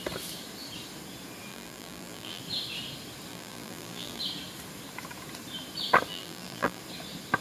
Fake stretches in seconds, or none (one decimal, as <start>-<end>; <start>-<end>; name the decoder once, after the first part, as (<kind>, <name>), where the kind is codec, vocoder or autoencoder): 1.5-2.4 (vocoder, BigVGAN v2); 3.3-4.2; 6.1-6.8